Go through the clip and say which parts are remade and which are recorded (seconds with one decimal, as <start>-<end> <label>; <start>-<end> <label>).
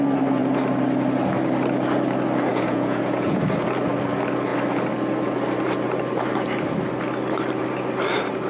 0.0-2.5 recorded; 2.5-3.5 remade; 3.5-8.5 recorded